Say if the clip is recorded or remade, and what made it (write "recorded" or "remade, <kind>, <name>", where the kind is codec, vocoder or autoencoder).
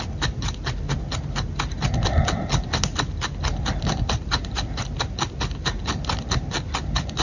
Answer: recorded